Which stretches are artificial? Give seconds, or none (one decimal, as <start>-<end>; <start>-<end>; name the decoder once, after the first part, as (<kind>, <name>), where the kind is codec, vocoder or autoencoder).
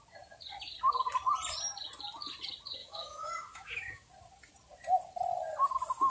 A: 2.8-4.1 (autoencoder, DAC-VAE)